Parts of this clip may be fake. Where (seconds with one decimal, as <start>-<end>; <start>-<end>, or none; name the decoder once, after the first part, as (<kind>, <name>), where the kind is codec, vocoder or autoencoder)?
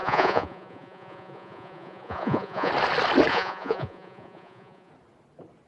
0.0-2.7 (vocoder, Vocos); 3.3-4.9